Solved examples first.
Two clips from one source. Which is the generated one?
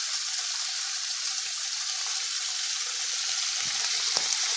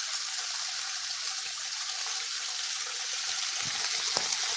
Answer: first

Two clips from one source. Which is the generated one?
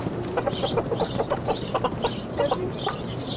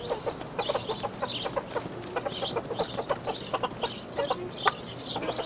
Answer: first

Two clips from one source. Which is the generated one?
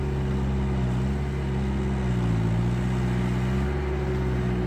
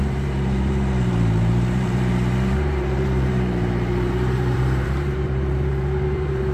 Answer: second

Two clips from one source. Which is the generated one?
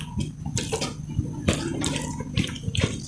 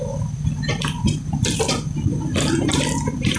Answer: second